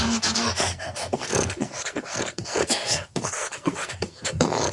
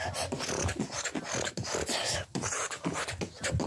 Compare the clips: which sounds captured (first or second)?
second